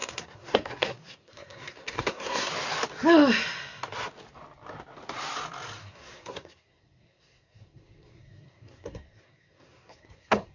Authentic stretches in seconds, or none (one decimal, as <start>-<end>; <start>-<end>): 2.5-5.8